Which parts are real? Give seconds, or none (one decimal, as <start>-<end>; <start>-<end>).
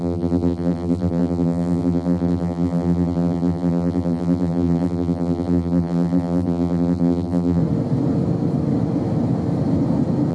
7.6-10.3